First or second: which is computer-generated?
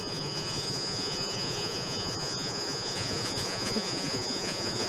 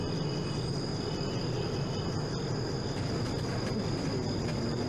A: first